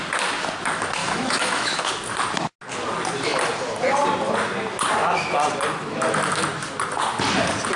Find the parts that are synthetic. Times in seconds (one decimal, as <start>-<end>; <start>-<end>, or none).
1.0-1.8